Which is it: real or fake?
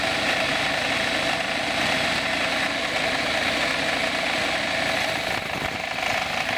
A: real